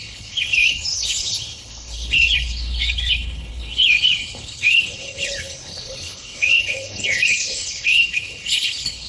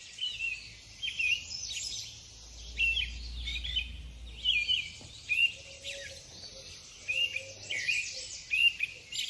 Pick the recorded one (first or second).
second